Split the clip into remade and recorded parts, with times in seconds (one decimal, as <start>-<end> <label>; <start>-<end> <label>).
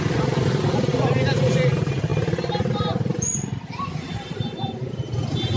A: 0.0-5.6 recorded